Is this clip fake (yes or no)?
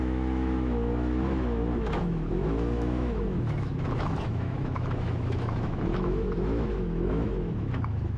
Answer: yes